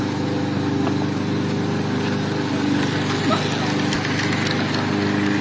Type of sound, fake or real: real